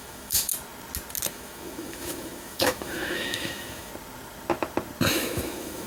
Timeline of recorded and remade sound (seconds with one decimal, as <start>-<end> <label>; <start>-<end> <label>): 0.0-0.5 remade; 0.5-1.3 recorded; 1.3-3.9 remade; 3.9-5.1 recorded; 5.1-5.9 remade

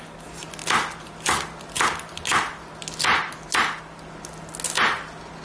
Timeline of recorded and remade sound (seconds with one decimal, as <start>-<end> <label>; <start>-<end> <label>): 0.0-5.4 recorded

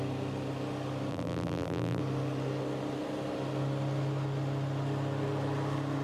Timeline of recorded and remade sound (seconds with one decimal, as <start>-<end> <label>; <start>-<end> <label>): 0.0-1.1 recorded; 1.1-2.0 remade; 2.0-6.0 recorded

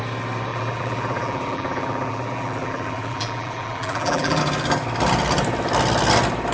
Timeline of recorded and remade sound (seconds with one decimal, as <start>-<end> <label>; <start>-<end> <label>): 0.0-0.5 recorded; 0.5-4.4 remade; 4.4-6.5 recorded